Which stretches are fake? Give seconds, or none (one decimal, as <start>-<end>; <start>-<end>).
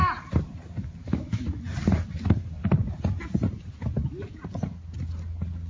1.0-1.6